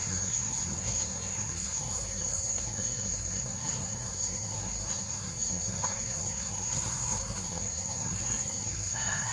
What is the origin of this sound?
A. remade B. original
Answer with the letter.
A